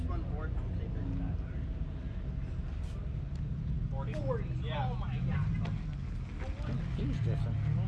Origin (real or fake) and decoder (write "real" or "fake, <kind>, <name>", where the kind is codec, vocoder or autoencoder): real